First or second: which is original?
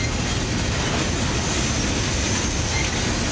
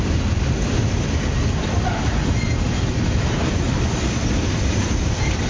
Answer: first